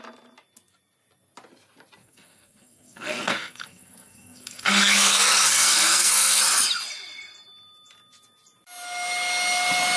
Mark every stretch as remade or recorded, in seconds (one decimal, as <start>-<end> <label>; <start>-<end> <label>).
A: 0.0-2.0 recorded; 2.0-6.4 remade; 6.4-10.0 recorded